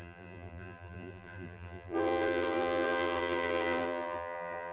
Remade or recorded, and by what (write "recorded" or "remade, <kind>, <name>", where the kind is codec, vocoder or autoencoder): remade, vocoder, BigVGAN v2